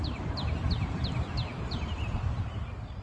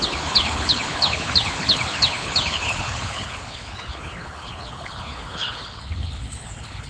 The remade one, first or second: second